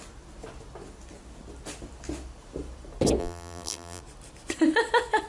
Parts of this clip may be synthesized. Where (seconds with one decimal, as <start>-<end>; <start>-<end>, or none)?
3.2-4.0